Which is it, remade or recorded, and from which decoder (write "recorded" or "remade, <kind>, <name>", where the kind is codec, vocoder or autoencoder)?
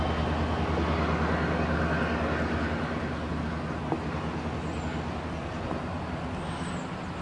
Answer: recorded